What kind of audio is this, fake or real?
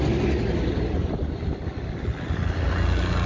real